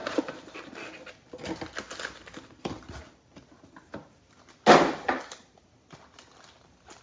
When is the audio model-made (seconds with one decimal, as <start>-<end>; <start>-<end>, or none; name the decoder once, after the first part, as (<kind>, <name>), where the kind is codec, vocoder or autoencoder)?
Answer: none